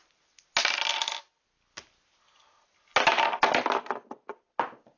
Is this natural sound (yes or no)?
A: yes